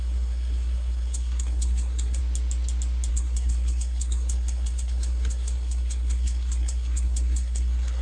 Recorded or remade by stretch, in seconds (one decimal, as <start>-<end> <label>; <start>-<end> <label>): 0.0-2.2 remade; 2.2-3.1 recorded; 3.1-8.0 remade